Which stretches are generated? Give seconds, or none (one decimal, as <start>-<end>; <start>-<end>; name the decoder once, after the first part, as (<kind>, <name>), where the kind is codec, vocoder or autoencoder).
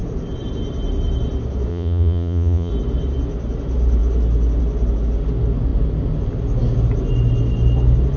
1.7-2.7 (vocoder, Vocos)